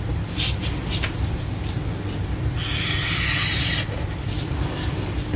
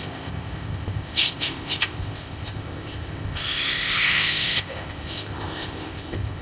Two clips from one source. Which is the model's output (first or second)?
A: second